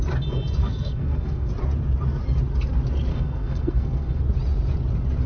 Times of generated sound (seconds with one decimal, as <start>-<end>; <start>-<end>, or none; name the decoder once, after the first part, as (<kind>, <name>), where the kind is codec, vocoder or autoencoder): 0.6-1.5 (codec, SNAC); 3.1-4.2